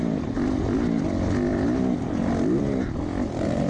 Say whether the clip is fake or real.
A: real